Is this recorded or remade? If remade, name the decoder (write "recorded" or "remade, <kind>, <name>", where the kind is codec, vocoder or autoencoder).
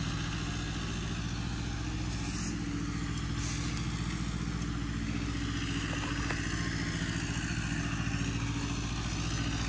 recorded